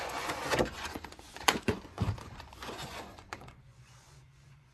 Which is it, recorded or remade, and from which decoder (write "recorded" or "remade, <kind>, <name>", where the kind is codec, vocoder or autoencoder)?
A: remade, vocoder, Vocos